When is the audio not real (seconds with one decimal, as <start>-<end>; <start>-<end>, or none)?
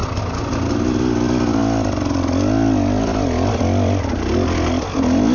none